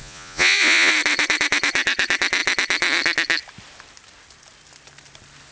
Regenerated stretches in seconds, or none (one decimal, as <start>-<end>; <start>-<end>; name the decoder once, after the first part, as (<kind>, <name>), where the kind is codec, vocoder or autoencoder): 0.0-0.9 (vocoder, Vocos)